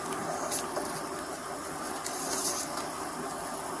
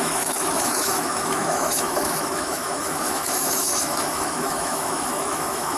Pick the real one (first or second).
first